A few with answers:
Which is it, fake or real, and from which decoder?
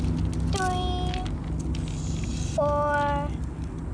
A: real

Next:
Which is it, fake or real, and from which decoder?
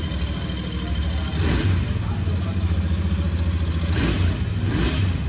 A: real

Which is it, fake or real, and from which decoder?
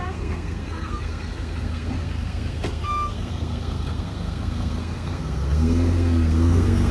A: fake, codec, SNAC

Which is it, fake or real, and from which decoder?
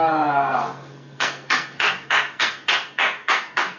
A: fake, codec, SNAC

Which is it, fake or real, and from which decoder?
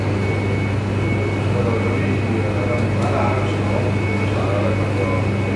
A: real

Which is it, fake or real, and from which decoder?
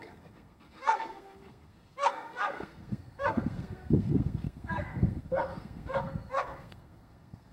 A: fake, codec, SNAC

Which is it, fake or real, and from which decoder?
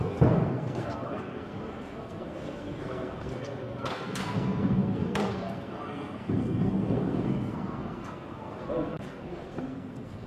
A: fake, codec, SNAC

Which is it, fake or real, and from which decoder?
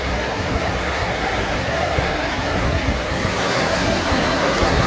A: fake, codec, SNAC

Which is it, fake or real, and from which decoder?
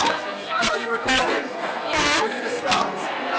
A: fake, codec, SNAC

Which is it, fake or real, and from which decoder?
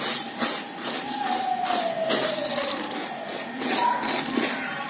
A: real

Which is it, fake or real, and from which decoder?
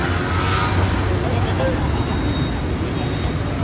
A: real